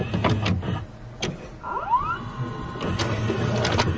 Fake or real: real